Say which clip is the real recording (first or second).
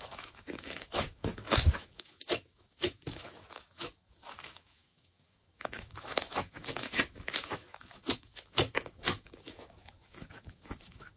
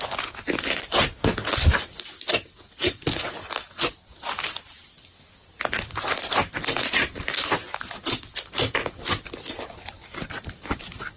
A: second